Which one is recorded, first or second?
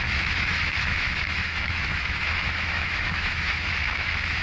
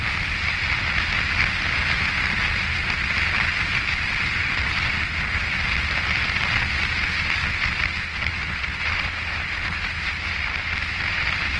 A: second